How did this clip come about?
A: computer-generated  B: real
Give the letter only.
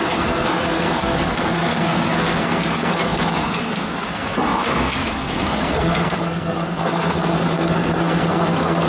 A